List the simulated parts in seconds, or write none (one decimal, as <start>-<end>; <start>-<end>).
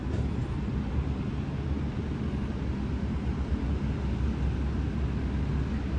none